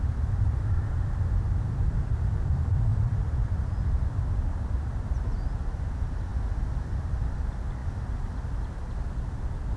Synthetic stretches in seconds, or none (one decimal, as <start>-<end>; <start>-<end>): 0.0-6.3; 7.3-7.8; 9.2-9.8